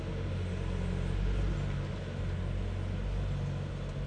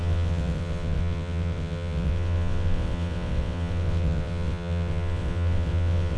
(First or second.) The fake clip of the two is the second